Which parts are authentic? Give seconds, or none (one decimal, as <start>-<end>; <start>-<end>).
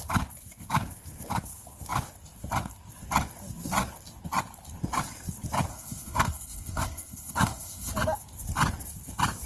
0.0-5.7; 7.9-9.5